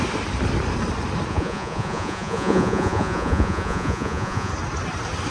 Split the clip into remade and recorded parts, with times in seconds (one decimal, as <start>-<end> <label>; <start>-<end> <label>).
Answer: 0.0-1.3 recorded; 1.3-4.5 remade; 4.5-5.3 recorded